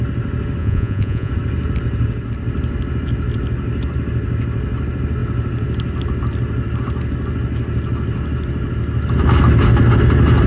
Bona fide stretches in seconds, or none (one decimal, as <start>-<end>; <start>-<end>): 0.0-0.6; 1.3-10.5